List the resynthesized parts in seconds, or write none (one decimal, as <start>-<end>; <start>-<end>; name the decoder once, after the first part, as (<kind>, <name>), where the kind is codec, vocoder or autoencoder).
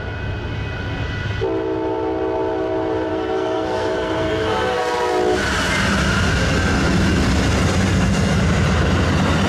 3.1-4.8 (codec, SNAC); 7.9-8.4